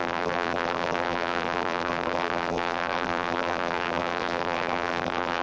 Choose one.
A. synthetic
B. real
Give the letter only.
A